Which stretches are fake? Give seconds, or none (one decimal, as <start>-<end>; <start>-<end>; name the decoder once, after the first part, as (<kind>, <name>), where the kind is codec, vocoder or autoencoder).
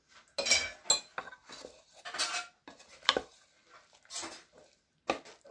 none